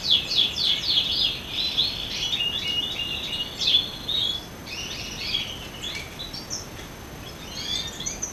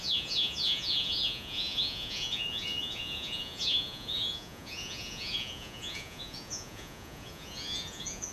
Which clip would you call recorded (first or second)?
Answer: first